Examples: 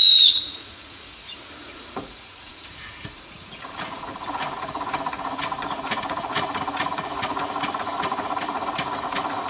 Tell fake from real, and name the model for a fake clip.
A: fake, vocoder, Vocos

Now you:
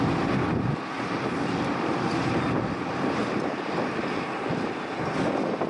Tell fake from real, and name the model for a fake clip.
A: real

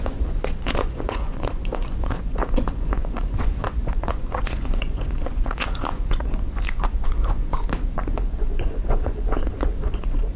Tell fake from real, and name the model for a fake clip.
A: fake, vocoder, Vocos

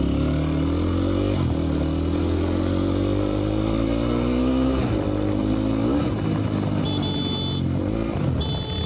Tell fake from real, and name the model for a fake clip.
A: real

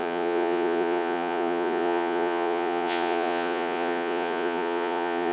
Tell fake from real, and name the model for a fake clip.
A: fake, vocoder, Vocos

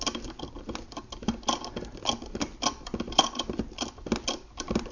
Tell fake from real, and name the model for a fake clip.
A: real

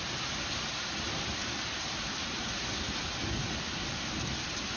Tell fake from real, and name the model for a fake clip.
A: real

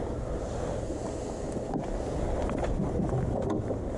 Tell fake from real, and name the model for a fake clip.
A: real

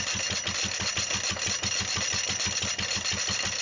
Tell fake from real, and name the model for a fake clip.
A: real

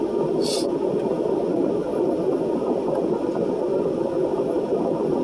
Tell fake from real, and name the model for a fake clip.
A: real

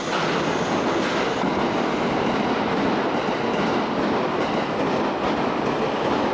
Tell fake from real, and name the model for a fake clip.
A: real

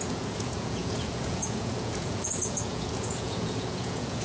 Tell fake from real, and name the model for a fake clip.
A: fake, vocoder, Vocos